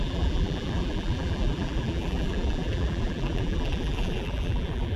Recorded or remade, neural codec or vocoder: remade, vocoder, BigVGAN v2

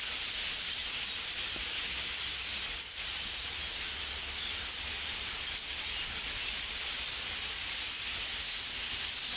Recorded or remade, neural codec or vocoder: recorded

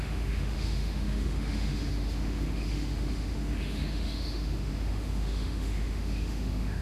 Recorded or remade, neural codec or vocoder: remade, autoencoder, DAC-VAE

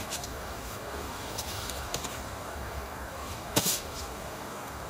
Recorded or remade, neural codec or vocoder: remade, codec, DAC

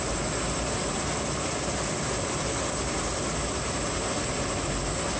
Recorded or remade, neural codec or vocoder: recorded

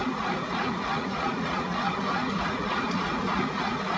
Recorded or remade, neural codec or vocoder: remade, vocoder, Vocos